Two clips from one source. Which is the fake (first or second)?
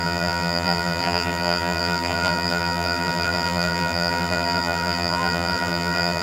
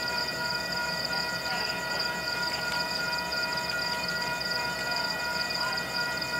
first